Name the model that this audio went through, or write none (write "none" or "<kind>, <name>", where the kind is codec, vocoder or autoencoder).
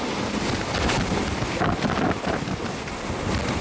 none